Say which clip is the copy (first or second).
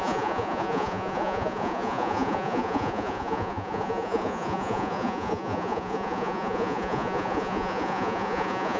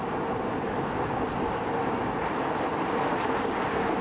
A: first